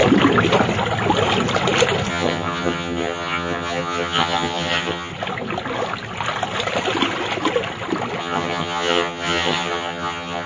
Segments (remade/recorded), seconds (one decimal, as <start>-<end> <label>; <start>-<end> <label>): 0.0-2.1 recorded; 2.1-5.1 remade; 5.1-8.2 recorded; 8.2-10.5 remade